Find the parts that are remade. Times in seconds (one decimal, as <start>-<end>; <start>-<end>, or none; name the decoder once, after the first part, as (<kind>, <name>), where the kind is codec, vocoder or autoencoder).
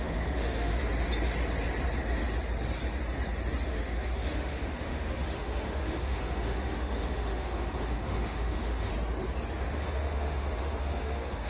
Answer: 0.0-0.7 (autoencoder, DAC-VAE); 3.7-8.9; 9.6-11.5